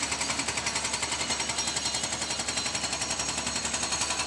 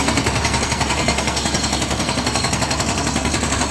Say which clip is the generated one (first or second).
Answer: second